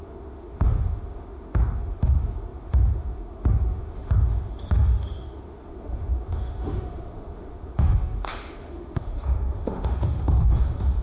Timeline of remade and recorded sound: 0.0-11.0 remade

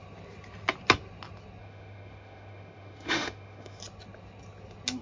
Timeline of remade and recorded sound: 0.0-1.6 recorded; 1.6-3.8 remade; 3.8-5.0 recorded

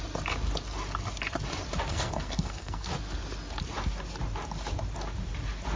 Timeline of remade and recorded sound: 0.0-1.9 recorded; 1.9-2.9 remade; 2.9-5.8 recorded

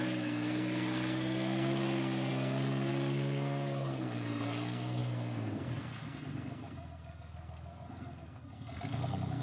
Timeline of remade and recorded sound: 0.0-9.4 remade

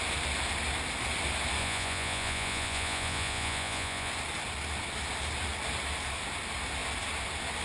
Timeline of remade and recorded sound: 0.0-1.6 recorded; 1.6-4.1 remade; 4.1-7.6 recorded

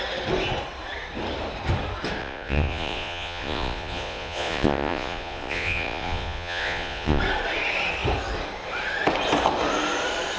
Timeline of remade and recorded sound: 0.0-2.2 recorded; 2.2-7.2 remade; 7.2-10.4 recorded